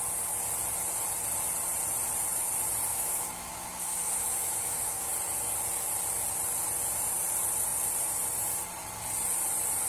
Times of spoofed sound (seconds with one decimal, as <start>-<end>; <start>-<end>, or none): 2.9-5.1